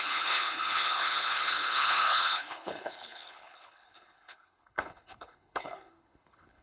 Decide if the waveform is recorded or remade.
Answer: remade